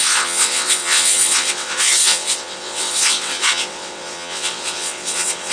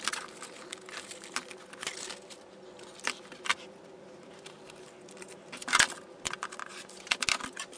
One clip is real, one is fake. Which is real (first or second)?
second